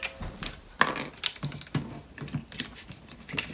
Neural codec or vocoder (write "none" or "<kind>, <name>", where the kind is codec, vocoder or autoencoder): none